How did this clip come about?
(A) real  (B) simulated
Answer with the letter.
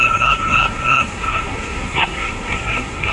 B